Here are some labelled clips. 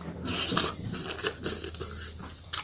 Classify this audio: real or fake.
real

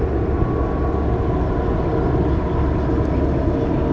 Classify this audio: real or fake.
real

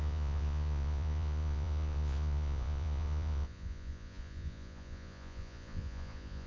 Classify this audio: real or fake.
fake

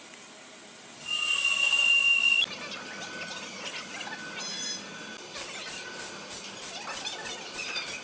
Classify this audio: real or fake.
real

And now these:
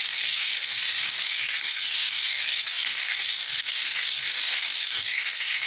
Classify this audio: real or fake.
fake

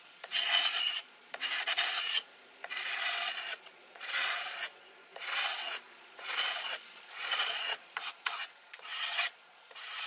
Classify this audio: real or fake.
fake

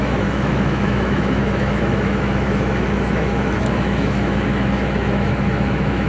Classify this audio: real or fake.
fake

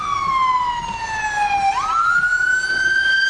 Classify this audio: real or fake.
real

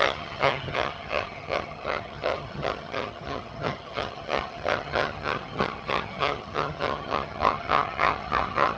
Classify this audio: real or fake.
fake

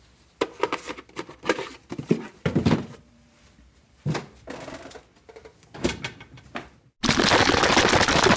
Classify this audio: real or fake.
real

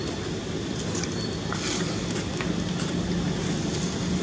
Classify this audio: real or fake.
real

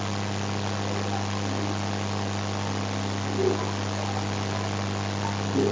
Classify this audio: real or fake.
real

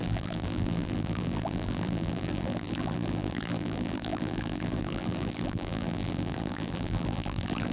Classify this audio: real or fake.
fake